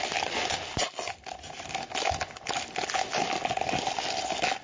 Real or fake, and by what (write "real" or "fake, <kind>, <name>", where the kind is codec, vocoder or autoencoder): real